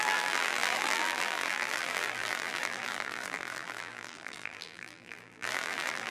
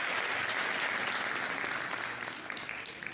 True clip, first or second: second